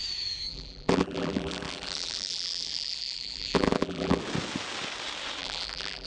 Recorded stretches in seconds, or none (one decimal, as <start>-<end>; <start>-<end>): 0.0-0.5; 4.2-5.4